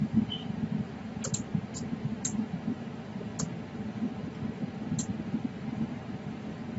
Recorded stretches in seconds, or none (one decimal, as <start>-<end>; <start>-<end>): 0.0-6.8